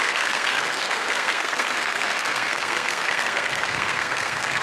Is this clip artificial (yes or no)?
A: yes